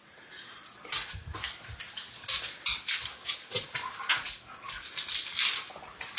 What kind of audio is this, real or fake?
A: real